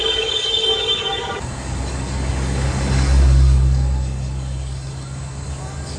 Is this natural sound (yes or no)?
no